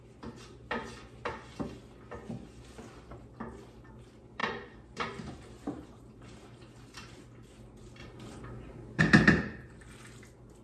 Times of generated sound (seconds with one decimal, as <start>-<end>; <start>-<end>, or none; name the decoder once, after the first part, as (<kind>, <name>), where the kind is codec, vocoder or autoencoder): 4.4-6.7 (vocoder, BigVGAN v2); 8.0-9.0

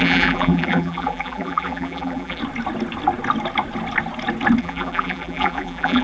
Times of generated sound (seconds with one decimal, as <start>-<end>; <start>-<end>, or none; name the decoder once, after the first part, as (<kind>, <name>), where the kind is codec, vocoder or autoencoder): 0.0-2.4 (vocoder, BigVGAN v2); 4.6-6.0

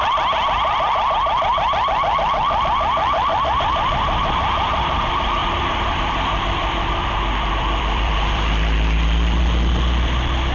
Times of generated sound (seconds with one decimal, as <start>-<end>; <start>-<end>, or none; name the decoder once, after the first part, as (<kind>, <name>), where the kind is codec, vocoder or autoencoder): 5.4-9.4 (vocoder, BigVGAN v2)

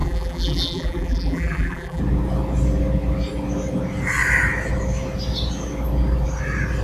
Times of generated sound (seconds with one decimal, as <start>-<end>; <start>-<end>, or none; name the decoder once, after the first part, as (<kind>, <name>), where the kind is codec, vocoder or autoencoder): 0.0-2.0 (vocoder, BigVGAN v2)